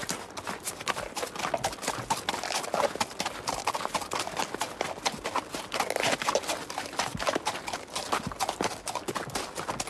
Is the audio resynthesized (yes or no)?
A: no